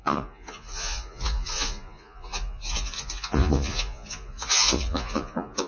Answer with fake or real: fake